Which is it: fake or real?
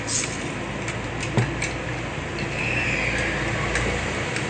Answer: real